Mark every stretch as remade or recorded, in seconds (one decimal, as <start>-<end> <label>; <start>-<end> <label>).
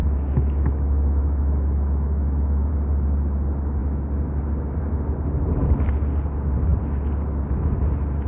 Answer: 0.0-2.7 remade; 2.7-8.3 recorded